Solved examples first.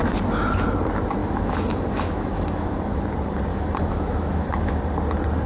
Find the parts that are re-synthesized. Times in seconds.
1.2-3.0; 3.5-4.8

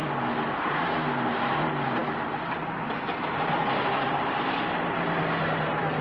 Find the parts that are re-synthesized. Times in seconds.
none

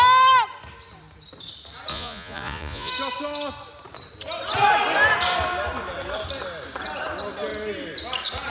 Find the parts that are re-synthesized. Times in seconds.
1.9-2.9

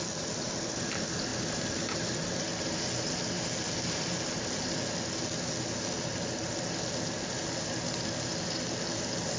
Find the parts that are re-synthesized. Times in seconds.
1.3-3.5

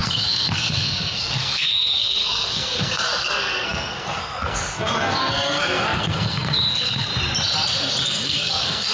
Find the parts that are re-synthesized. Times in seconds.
0.0-7.1; 8.0-8.9